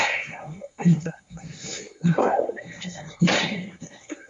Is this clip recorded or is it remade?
remade